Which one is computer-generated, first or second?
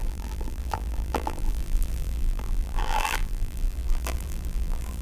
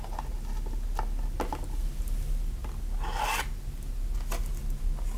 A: first